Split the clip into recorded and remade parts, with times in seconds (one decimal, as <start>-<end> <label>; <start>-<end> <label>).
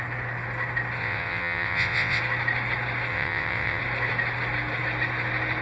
0.0-1.0 recorded; 1.0-2.2 remade; 2.2-3.1 recorded; 3.1-3.8 remade; 3.8-5.6 recorded